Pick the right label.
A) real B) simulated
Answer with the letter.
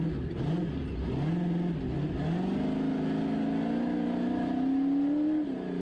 A